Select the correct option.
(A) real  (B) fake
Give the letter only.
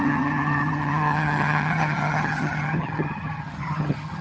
B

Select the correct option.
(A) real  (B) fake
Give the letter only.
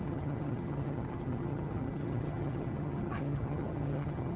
B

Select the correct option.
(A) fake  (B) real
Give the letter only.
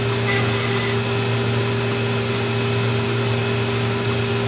B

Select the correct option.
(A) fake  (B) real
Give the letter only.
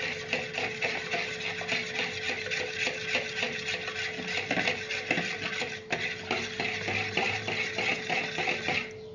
B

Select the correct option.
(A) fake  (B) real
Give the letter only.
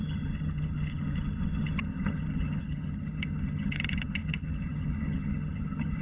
A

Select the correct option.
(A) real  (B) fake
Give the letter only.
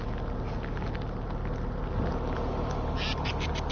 A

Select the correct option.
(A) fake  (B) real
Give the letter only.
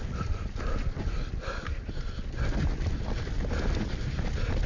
B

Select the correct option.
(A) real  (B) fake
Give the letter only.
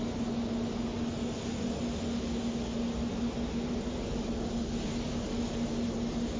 A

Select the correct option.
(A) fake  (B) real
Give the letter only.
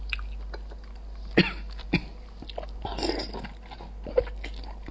B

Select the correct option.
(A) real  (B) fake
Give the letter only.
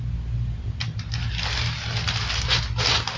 A